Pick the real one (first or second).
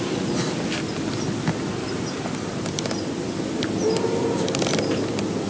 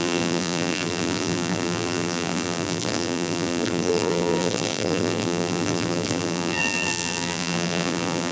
first